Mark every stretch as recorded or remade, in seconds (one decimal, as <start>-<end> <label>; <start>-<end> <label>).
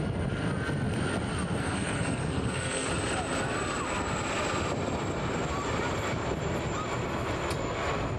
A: 0.0-1.6 recorded; 1.6-2.9 remade; 2.9-8.2 recorded